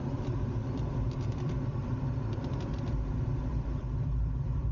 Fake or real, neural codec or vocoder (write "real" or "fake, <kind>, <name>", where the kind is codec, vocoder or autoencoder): fake, vocoder, BigVGAN v2